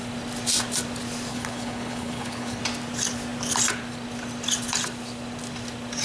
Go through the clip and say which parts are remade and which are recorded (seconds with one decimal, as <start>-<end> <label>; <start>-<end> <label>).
0.0-1.3 recorded; 1.3-2.6 remade; 2.6-6.0 recorded